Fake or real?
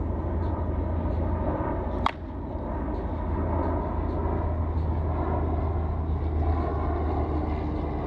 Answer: real